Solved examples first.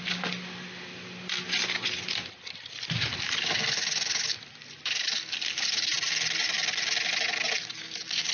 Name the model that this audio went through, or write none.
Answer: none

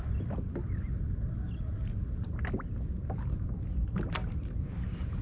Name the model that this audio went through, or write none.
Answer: none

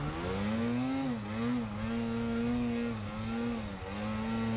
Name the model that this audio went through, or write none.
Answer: none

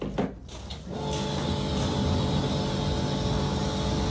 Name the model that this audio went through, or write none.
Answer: none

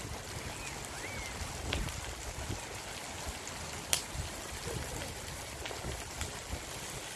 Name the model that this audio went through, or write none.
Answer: none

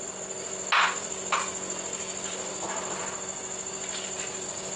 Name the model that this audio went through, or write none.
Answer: none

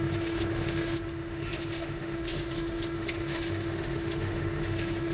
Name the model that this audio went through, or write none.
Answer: autoencoder, DAC-VAE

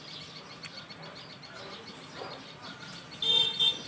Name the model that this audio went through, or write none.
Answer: none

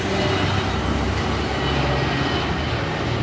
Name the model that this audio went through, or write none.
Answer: none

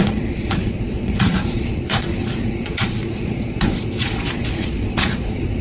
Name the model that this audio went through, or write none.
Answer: vocoder, Vocos